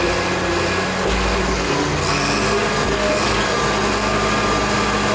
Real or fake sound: real